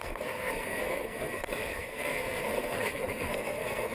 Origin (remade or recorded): remade